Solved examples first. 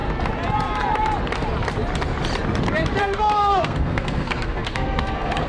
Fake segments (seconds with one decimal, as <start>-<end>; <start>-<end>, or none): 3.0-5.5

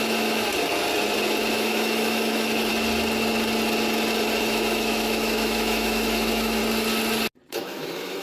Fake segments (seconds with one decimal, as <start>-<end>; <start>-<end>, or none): 0.0-0.5; 1.5-2.7; 4.4-6.6; 7.5-8.2

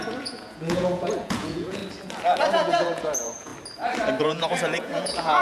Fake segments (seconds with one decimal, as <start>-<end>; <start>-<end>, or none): 0.0-1.8; 2.5-3.5; 4.2-5.4